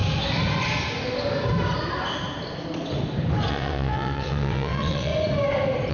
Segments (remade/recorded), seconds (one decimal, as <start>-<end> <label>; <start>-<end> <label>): 0.0-3.5 recorded; 3.5-5.1 remade; 5.1-5.9 recorded

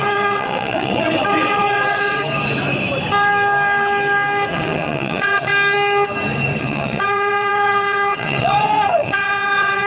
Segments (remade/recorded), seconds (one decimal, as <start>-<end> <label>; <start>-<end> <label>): 0.0-2.2 remade; 2.2-4.5 recorded; 4.5-5.5 remade; 5.5-6.6 recorded; 6.6-9.9 remade

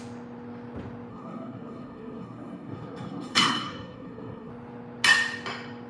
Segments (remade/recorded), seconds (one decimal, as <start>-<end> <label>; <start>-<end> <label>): 0.0-1.1 recorded; 1.1-4.5 remade; 4.5-5.9 recorded

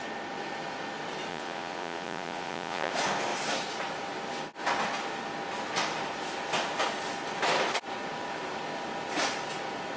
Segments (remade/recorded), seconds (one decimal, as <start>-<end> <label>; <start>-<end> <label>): 0.0-1.3 recorded; 1.3-2.9 remade; 2.9-10.0 recorded

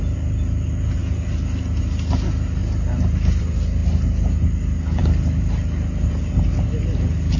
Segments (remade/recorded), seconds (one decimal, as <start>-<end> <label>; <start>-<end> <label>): 0.0-7.4 recorded

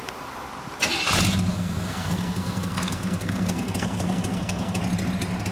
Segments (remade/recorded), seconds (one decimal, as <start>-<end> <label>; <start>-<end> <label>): 0.0-1.5 recorded; 1.5-4.8 remade; 4.8-5.5 recorded

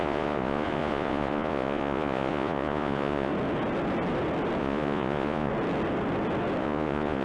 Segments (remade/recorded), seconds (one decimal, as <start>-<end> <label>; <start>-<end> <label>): 0.0-3.3 remade; 3.3-4.6 recorded; 4.6-5.5 remade; 5.5-6.6 recorded; 6.6-7.2 remade

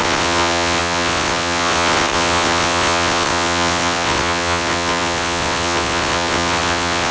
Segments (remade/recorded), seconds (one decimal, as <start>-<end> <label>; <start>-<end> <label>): 0.0-7.1 remade